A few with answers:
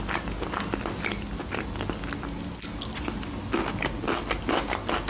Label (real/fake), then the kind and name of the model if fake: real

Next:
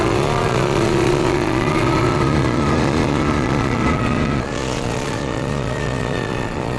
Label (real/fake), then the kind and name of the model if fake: fake, vocoder, Vocos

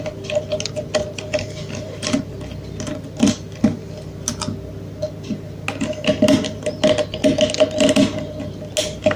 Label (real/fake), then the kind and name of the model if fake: real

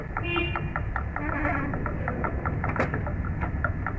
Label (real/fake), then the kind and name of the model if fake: real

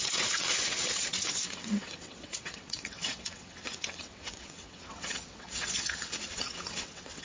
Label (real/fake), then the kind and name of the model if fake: fake, vocoder, WaveNeXt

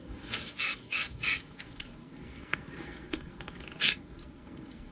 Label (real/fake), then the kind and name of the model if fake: fake, codec, SNAC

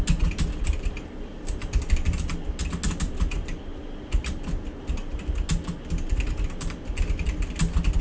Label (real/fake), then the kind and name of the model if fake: real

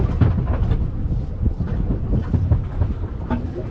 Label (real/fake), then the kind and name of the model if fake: fake, vocoder, BigVGAN v2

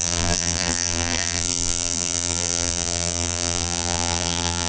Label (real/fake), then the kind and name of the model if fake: fake, vocoder, BigVGAN v2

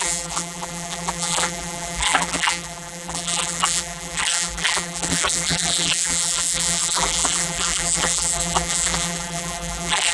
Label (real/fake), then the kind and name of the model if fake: fake, vocoder, BigVGAN v2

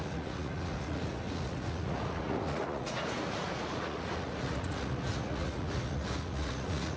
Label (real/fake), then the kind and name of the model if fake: fake, vocoder, Vocos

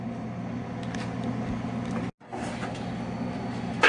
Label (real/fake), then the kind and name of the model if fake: real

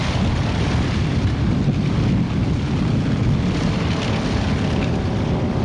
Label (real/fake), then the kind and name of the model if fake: real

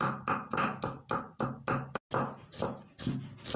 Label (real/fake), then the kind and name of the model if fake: real